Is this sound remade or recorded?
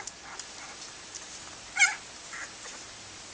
recorded